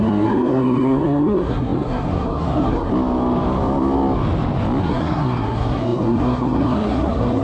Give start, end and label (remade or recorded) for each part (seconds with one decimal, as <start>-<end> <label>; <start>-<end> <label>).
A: 0.0-2.9 remade; 2.9-4.8 recorded; 4.8-7.4 remade